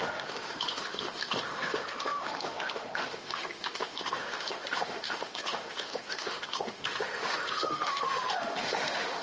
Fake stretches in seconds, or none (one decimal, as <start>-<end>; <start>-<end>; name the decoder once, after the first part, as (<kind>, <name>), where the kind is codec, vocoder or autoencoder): 0.0-9.2 (autoencoder, DAC-VAE)